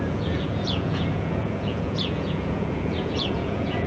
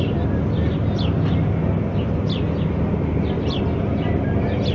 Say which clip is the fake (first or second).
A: first